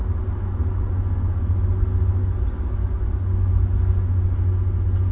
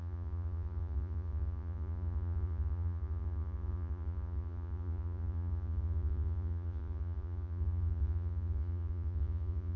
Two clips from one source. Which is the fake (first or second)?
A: second